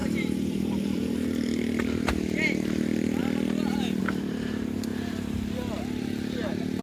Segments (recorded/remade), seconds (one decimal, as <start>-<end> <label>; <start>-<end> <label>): 0.0-3.2 remade; 3.2-4.0 recorded; 4.0-4.9 remade; 4.9-6.8 recorded